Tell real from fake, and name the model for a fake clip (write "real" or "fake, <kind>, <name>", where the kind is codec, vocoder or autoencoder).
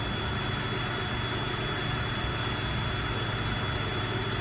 real